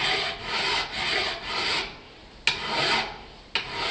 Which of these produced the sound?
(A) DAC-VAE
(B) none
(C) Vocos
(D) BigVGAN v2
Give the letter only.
B